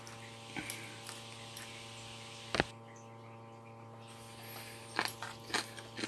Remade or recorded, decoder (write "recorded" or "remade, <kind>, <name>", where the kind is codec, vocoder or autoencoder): recorded